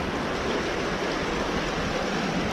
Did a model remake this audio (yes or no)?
no